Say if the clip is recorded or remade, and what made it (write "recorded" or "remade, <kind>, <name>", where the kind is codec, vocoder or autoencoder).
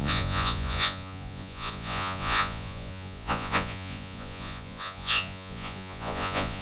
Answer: remade, vocoder, Vocos